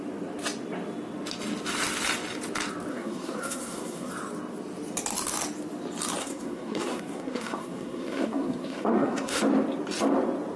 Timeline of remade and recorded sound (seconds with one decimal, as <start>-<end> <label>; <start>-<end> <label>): 0.0-2.9 recorded; 2.9-4.1 remade; 4.1-6.2 recorded; 6.2-9.4 remade; 9.4-10.6 recorded